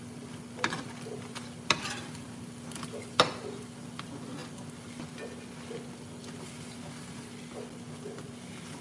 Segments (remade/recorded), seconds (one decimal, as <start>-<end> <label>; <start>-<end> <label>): 0.0-8.8 recorded